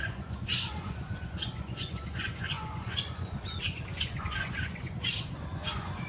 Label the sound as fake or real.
fake